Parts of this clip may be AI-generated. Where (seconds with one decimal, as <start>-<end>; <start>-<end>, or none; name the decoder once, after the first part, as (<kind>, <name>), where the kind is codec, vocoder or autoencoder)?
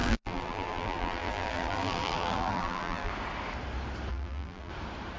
0.0-3.1 (vocoder, BigVGAN v2); 4.1-4.7